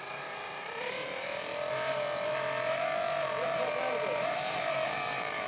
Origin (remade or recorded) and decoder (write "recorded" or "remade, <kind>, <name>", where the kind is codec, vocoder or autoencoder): remade, vocoder, BigVGAN v2